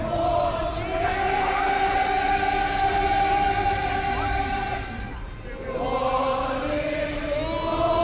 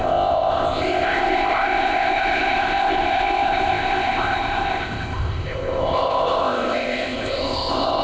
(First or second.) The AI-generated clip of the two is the second